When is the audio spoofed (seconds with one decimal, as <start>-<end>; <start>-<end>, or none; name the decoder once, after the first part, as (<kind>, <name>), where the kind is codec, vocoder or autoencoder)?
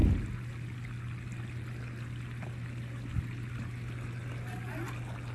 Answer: none